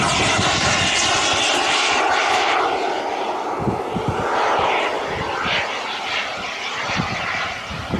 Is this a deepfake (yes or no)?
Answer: no